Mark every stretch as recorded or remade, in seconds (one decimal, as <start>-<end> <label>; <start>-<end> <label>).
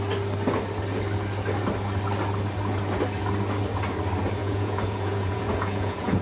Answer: 0.0-4.4 recorded; 4.4-6.2 remade